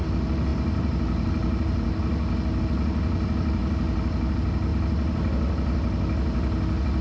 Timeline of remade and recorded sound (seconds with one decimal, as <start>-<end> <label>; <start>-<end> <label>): 0.0-3.6 recorded; 3.6-4.3 remade; 4.3-7.0 recorded